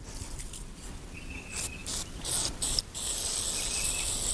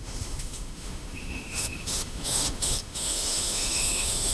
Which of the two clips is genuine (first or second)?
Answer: first